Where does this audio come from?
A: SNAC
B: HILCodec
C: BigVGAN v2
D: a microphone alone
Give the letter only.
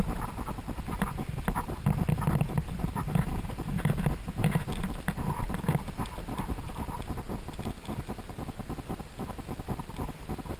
D